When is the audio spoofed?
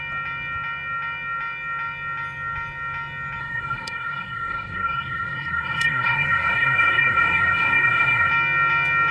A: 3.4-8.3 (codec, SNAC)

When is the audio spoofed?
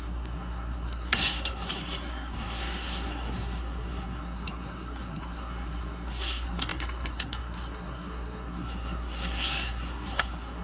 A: 0.0-10.6 (codec, SNAC)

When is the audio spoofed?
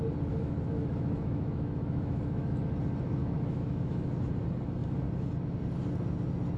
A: 0.4-2.6 (autoencoder, DAC-VAE); 3.2-4.1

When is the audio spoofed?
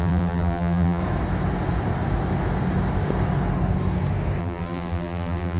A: 0.0-1.0 (vocoder, BigVGAN v2); 4.4-5.6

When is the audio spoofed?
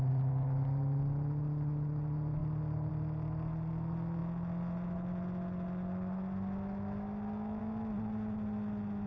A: none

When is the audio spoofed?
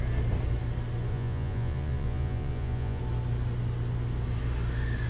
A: 1.1-3.0 (vocoder, Vocos)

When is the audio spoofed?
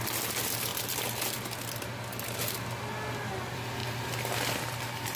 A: none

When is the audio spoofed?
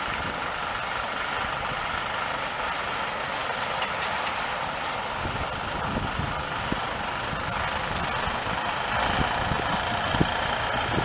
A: none